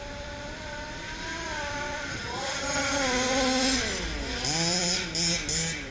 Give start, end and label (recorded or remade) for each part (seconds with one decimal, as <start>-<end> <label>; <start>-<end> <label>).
0.0-2.1 recorded; 2.1-3.0 remade; 3.0-5.9 recorded